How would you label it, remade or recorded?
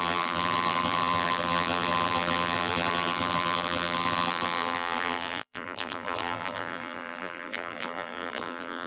remade